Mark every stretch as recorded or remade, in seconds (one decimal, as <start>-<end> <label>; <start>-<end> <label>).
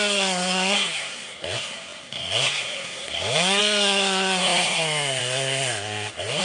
0.0-6.4 remade